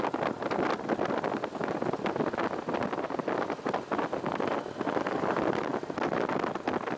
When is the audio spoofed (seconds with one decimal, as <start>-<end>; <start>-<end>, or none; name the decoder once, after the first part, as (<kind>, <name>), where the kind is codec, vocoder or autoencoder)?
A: none